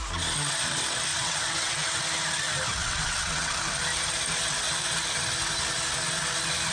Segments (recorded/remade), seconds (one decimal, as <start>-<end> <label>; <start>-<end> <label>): 0.0-1.1 recorded; 1.1-2.0 remade; 2.0-2.8 recorded; 2.8-3.5 remade; 3.5-6.7 recorded